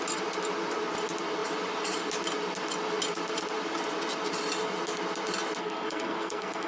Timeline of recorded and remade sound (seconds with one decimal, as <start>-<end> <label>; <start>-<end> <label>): 0.0-5.6 recorded; 5.6-6.7 remade